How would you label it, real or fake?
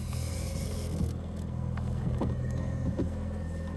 fake